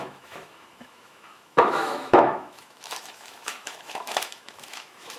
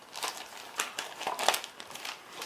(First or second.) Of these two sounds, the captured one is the second